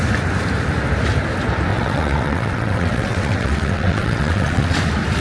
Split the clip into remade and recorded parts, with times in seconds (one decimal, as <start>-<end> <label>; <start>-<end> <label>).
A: 0.0-1.7 recorded; 1.7-4.8 remade; 4.8-5.2 recorded